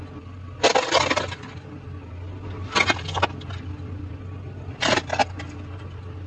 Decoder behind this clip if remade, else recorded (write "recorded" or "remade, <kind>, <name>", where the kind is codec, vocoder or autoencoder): recorded